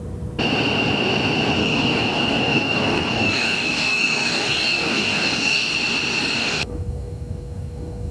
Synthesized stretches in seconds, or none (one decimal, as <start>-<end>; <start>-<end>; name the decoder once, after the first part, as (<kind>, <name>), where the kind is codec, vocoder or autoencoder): 1.6-5.7 (codec, DAC); 6.4-8.1